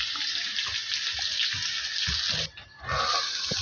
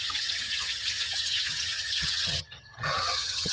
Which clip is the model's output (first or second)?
second